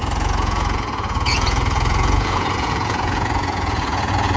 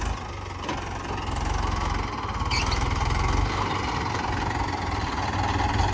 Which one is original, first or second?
second